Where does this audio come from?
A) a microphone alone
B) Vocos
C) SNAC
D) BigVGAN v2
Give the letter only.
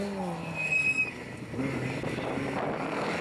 A